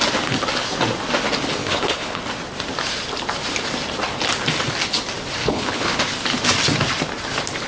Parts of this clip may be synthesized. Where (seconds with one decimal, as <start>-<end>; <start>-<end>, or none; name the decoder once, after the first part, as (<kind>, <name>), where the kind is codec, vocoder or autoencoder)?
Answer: 1.6-2.2 (codec, HILCodec); 5.4-6.0